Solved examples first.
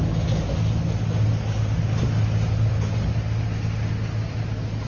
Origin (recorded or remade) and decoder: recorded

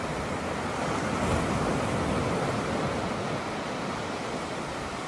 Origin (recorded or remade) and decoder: recorded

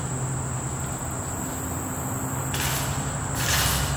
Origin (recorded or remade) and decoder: recorded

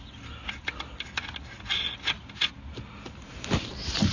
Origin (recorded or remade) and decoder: recorded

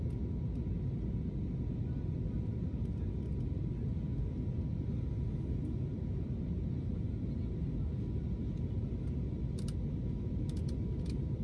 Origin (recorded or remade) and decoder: recorded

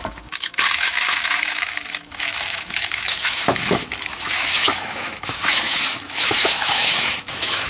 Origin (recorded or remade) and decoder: remade, autoencoder, DAC-VAE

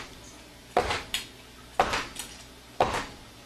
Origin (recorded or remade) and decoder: recorded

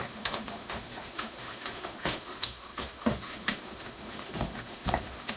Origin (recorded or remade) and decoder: remade, autoencoder, DAC-VAE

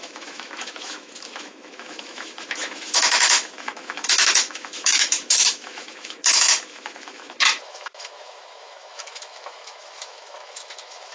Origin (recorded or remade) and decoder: remade, autoencoder, DAC-VAE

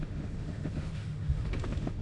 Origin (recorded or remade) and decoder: remade, autoencoder, DAC-VAE